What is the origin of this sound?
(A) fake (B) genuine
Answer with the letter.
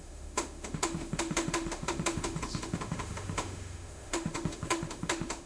A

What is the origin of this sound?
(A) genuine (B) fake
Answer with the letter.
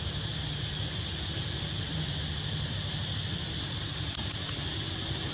A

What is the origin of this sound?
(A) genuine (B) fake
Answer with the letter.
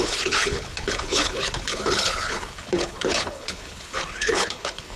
B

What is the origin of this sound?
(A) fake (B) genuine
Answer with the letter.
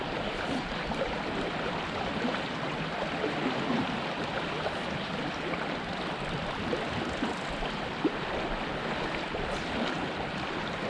B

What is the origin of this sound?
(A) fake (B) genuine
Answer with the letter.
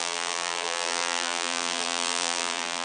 A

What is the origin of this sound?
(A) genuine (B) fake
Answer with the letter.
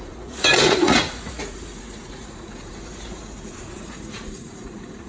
B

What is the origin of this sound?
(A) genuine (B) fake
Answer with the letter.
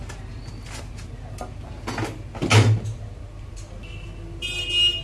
A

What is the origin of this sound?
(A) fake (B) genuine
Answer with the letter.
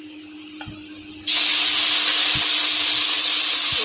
B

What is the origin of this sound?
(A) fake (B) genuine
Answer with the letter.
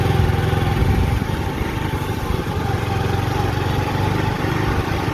B